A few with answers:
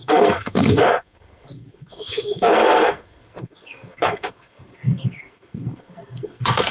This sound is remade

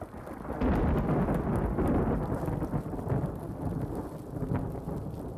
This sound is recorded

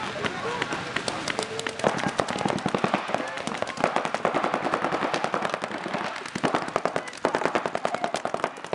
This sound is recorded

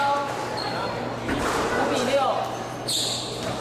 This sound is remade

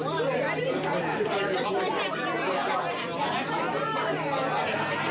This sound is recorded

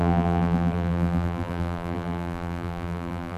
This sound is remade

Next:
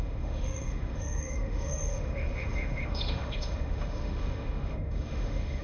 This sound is remade